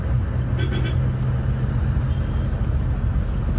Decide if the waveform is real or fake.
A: real